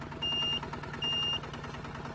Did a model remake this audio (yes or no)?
no